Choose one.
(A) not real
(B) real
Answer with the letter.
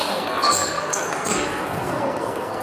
A